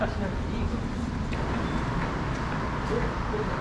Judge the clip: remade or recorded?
recorded